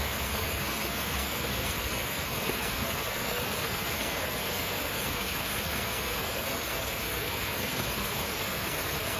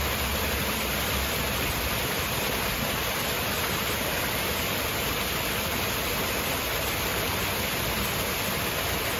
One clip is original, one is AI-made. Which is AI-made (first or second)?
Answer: first